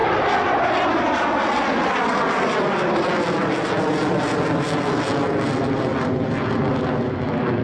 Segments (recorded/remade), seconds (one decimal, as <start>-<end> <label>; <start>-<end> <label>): 0.0-7.6 recorded